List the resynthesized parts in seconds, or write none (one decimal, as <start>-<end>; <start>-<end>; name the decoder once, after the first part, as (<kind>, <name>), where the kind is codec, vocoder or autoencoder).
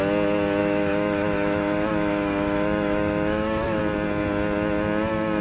0.6-3.8 (autoencoder, DAC-VAE)